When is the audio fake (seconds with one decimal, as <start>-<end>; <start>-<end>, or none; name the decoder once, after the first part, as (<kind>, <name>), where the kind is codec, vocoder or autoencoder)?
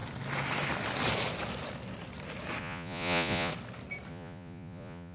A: 2.6-3.5 (vocoder, Vocos); 4.1-5.1